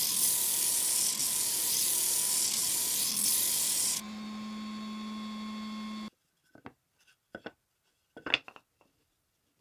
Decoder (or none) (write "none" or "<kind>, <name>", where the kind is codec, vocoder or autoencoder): none